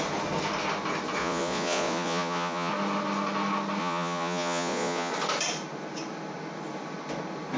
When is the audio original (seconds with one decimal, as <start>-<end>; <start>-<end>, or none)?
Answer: 0.0-1.2; 2.7-3.8; 5.1-7.6